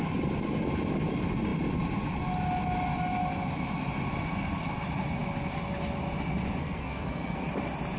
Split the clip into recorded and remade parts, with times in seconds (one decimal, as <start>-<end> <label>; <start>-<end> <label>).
0.0-6.6 recorded; 6.6-7.5 remade; 7.5-8.0 recorded